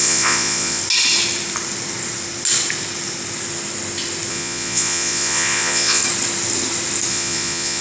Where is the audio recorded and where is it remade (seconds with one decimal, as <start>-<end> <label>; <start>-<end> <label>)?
0.0-0.8 remade; 0.8-4.3 recorded; 4.3-6.0 remade; 6.0-7.1 recorded; 7.1-7.8 remade